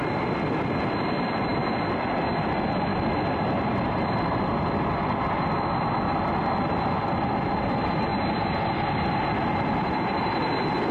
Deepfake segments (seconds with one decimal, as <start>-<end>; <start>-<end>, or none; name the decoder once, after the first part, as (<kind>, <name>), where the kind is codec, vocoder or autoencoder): none